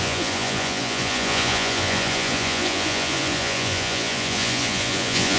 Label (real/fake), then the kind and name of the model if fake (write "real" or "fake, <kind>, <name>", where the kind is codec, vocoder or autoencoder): fake, vocoder, Vocos